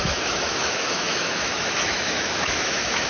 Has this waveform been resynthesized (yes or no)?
yes